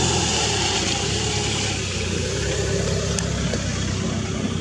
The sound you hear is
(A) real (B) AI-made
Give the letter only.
A